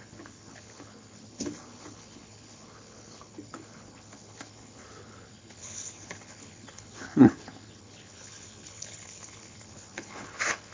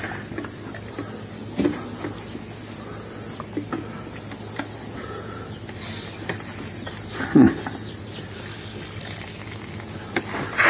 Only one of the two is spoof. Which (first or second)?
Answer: first